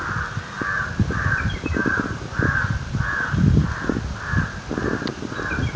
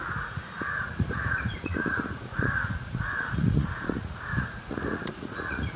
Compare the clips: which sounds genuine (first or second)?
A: first